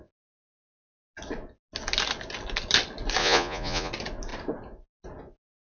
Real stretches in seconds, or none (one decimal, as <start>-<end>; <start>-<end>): 0.0-3.2; 3.9-5.6